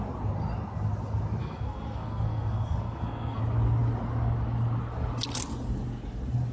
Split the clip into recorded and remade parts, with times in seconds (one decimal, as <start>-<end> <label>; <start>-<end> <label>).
0.0-1.4 recorded; 1.4-3.4 remade; 3.4-6.5 recorded